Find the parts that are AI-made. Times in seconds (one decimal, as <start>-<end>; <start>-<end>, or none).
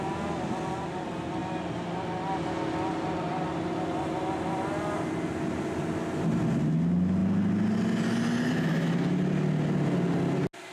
none